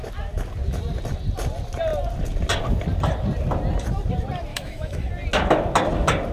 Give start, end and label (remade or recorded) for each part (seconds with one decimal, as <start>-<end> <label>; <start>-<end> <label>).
0.0-4.5 recorded; 4.5-5.1 remade; 5.1-6.3 recorded